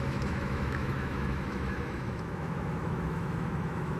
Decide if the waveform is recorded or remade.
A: remade